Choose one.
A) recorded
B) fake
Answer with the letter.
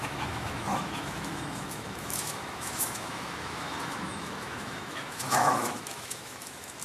B